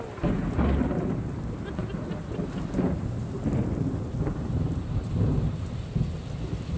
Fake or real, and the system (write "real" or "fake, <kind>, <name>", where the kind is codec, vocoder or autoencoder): real